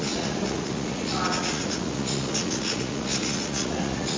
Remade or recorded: remade